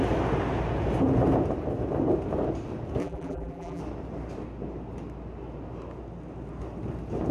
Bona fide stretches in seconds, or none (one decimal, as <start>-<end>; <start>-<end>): 0.0-3.0; 3.8-7.3